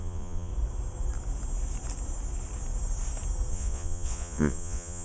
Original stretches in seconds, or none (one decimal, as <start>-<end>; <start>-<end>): 0.5-3.5